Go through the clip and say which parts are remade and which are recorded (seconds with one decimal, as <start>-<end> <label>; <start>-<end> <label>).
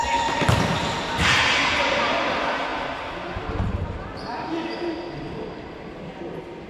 0.0-0.8 recorded; 0.8-1.5 remade; 1.5-6.7 recorded